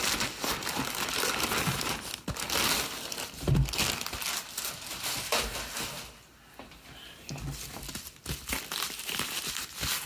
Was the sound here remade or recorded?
recorded